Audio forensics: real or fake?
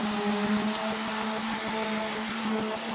real